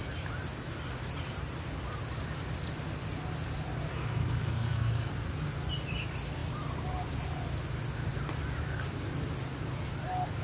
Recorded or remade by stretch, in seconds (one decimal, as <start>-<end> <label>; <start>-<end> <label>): 0.0-3.9 recorded; 3.9-5.1 remade; 5.1-10.4 recorded